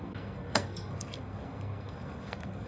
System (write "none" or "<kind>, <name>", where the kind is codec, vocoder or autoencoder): codec, SNAC